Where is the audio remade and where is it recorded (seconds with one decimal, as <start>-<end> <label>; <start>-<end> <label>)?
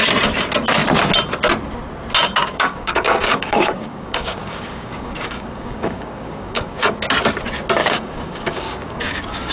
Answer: 0.0-2.4 recorded; 2.4-6.9 remade; 6.9-7.8 recorded; 7.8-9.5 remade